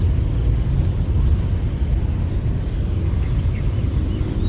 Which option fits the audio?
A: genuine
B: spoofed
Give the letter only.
A